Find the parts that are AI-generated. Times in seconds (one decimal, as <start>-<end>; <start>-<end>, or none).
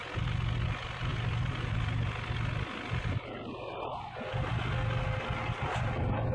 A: none